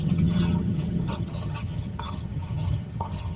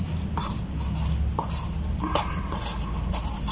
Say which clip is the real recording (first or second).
second